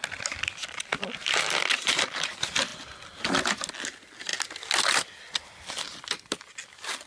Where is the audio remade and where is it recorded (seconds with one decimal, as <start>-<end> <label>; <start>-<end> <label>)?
0.0-7.1 recorded